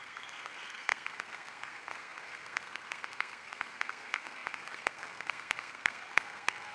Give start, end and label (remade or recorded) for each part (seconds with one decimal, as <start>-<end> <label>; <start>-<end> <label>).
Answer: 0.0-6.7 remade